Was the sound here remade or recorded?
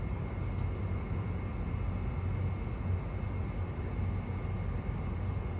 recorded